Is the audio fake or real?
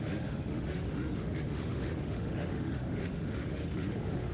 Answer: fake